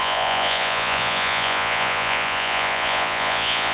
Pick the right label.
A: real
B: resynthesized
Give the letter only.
B